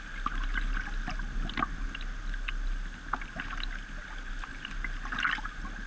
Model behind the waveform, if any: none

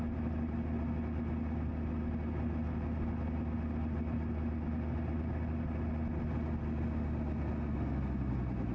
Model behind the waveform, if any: none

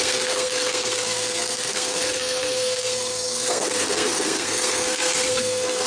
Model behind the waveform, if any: codec, SNAC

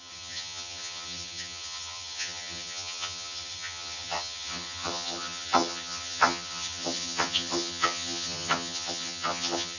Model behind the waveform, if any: vocoder, HiFi-GAN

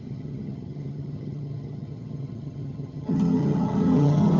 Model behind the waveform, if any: vocoder, HiFi-GAN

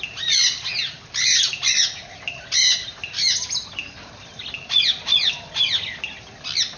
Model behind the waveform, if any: none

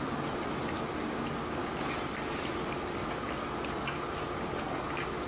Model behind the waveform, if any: none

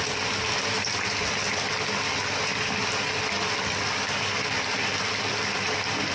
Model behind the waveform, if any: none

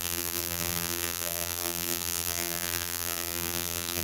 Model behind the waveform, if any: vocoder, BigVGAN v2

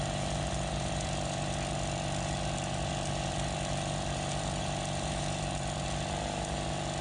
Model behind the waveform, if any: vocoder, BigVGAN v2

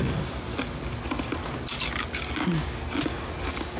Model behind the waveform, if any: none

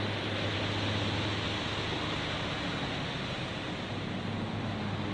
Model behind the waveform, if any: none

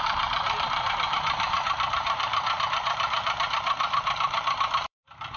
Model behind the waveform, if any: vocoder, BigVGAN v2